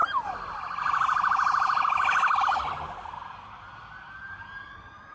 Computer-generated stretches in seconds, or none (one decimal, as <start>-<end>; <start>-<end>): none